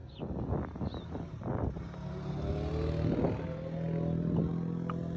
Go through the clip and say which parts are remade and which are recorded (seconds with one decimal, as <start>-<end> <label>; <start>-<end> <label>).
0.0-5.2 recorded